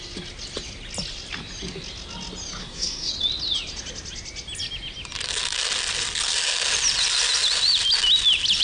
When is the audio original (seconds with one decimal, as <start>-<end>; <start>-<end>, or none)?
0.0-2.6; 3.1-8.6